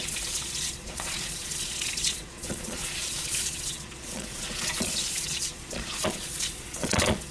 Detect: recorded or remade remade